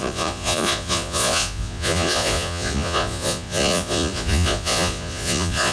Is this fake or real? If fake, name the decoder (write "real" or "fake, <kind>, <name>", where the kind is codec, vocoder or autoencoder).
fake, vocoder, Vocos